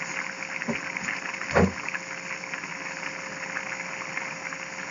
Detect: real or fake real